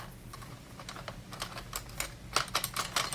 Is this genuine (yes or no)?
yes